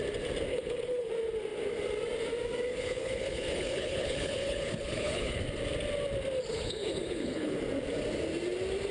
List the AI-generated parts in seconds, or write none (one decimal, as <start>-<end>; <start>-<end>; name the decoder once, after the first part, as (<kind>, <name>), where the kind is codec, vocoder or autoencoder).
0.5-1.1 (codec, HILCodec); 2.7-5.4; 6.5-7.6